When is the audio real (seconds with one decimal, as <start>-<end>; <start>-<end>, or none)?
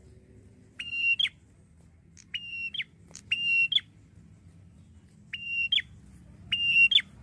0.0-7.2